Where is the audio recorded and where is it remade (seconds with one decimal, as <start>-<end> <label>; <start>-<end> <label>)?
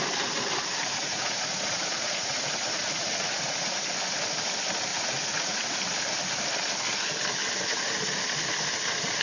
0.0-0.8 recorded; 0.8-3.7 remade; 3.7-4.9 recorded; 4.9-5.8 remade; 5.8-9.2 recorded